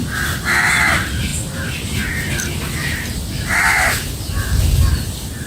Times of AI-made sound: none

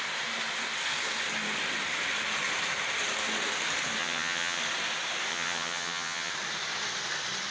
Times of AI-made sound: 4.0-4.6; 5.3-6.3

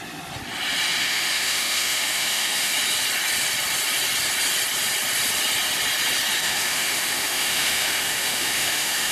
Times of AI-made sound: 1.0-2.7; 6.4-9.1

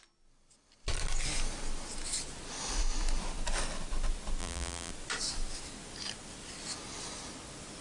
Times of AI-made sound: 4.4-4.9

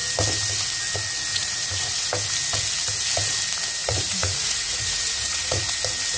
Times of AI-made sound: 1.3-2.1; 3.8-5.7

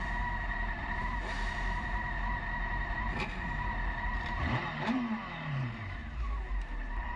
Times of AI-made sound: 0.0-7.2